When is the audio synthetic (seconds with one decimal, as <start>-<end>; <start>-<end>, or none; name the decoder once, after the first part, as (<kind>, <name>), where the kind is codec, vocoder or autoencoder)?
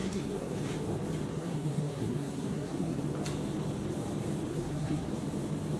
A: 0.0-0.6 (codec, SNAC); 1.3-3.0; 4.5-5.1